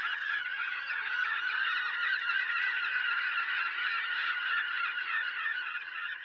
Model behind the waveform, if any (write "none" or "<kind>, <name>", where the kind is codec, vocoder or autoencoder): vocoder, HiFi-GAN